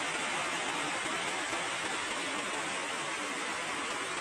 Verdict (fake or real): real